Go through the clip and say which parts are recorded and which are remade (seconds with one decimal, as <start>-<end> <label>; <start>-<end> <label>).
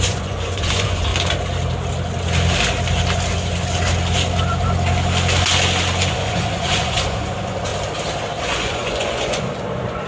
0.0-1.1 remade; 1.1-6.1 recorded; 6.1-7.7 remade; 7.7-8.4 recorded; 8.4-10.1 remade